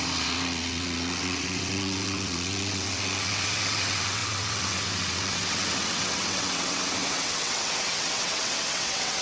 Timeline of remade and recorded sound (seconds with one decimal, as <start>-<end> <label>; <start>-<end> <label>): 0.0-9.2 remade